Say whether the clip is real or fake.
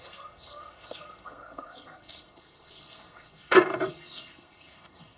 fake